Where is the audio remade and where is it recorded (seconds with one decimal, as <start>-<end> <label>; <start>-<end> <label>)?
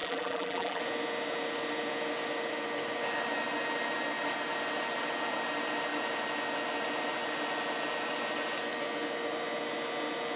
0.0-0.8 remade; 0.8-10.4 recorded